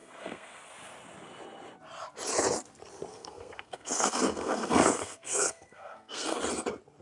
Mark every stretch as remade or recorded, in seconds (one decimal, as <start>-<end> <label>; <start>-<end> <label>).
0.0-0.6 remade; 0.6-3.1 recorded; 3.1-6.4 remade; 6.4-7.0 recorded